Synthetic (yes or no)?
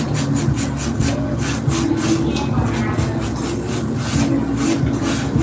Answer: no